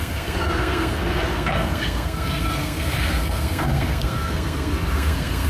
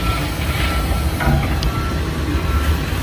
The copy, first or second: first